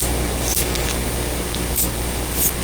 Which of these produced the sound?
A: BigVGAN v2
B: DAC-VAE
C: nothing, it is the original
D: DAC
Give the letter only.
D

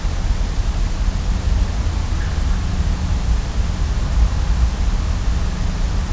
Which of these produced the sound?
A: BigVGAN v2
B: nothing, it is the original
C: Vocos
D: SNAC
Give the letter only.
B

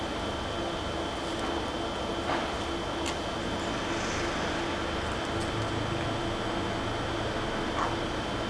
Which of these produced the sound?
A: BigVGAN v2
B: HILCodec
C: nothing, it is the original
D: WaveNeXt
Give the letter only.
C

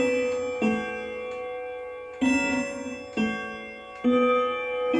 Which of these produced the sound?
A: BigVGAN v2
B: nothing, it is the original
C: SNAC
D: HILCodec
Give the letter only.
B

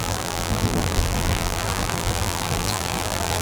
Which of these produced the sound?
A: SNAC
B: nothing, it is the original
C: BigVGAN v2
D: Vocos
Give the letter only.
C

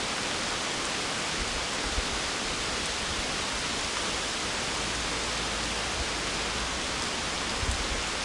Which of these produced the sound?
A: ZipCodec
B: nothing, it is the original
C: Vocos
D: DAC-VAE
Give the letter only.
B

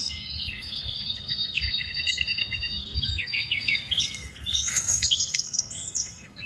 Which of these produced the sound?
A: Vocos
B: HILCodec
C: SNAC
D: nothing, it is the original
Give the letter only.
C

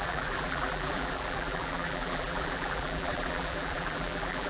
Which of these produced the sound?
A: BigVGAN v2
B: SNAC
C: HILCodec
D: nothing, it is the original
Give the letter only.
A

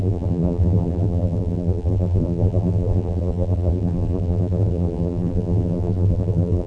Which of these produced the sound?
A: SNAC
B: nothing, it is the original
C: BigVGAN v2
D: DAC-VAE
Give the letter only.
C